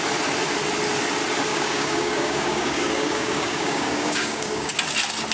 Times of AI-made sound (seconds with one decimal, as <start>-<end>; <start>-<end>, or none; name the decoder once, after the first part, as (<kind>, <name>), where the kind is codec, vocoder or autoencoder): 1.5-4.7 (codec, DAC)